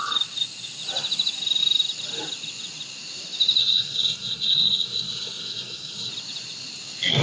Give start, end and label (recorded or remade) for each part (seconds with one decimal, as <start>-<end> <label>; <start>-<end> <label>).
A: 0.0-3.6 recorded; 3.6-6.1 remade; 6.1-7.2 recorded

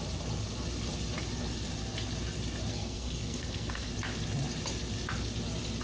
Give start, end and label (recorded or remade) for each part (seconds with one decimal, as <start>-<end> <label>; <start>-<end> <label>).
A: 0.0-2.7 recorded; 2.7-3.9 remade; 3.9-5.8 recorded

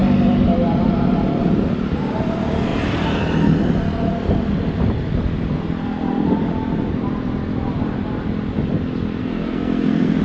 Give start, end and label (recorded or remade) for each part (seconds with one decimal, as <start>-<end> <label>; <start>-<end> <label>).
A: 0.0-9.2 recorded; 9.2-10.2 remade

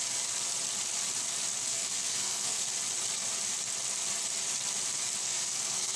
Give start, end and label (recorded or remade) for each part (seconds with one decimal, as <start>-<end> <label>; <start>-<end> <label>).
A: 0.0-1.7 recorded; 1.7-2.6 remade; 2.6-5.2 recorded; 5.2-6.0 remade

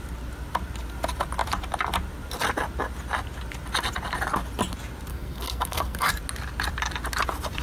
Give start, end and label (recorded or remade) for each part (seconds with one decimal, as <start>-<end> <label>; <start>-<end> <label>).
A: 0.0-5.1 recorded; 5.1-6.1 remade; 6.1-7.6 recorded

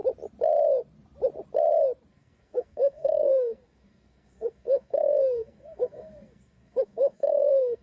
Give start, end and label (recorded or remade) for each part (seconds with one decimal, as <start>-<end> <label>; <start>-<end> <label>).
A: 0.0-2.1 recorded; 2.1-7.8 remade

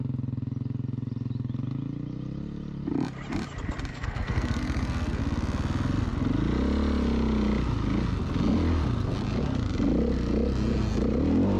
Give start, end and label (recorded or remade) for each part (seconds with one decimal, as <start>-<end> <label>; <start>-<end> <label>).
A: 0.0-3.9 recorded; 3.9-5.2 remade; 5.2-11.6 recorded